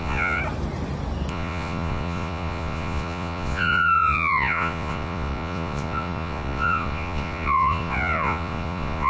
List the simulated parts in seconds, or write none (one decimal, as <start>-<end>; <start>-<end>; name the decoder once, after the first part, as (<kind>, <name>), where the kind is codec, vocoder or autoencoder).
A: 0.0-0.4 (vocoder, Vocos); 1.3-9.1